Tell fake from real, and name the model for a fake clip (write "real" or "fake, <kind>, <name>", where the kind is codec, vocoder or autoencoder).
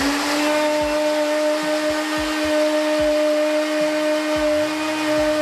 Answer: real